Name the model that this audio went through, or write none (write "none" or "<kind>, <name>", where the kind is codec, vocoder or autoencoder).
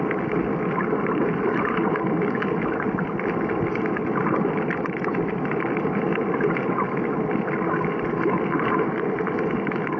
none